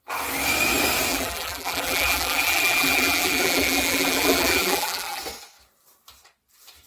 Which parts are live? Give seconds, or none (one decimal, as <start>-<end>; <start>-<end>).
0.0-1.1; 5.2-6.9